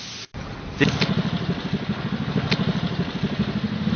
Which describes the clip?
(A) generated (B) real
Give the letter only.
B